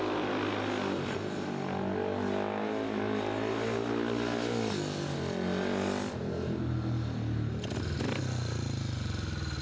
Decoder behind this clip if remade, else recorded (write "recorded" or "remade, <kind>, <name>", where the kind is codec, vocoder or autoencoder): recorded